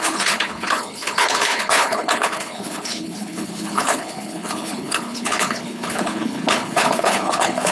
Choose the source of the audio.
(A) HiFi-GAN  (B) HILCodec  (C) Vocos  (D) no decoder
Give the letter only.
B